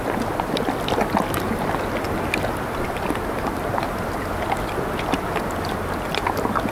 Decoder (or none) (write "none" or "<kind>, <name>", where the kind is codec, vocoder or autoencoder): none